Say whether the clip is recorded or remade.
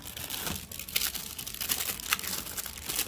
recorded